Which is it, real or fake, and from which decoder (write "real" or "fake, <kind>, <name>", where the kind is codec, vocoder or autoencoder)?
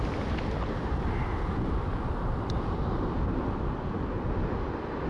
real